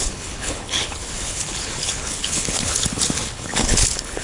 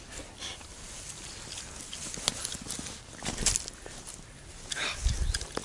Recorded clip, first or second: second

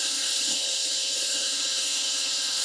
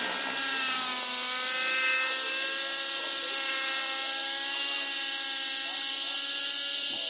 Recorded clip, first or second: second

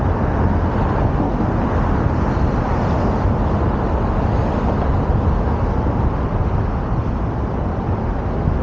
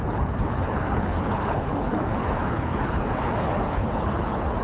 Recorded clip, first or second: first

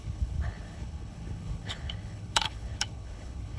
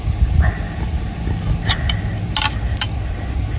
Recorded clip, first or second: second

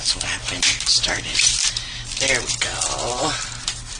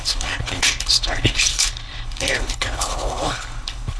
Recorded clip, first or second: first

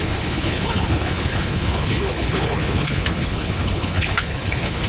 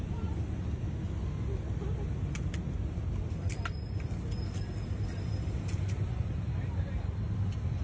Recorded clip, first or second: second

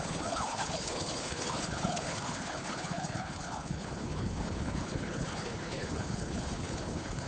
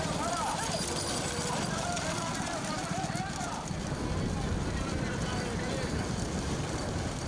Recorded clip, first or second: second